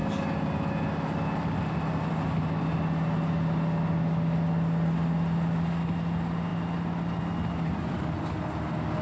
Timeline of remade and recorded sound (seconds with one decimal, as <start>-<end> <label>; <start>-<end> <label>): 0.0-9.0 recorded